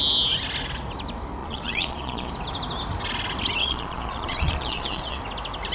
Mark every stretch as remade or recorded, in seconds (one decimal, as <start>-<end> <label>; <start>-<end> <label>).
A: 0.0-1.4 recorded; 1.4-2.3 remade; 2.3-3.6 recorded; 3.6-5.2 remade; 5.2-5.7 recorded